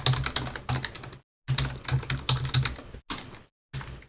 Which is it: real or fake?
real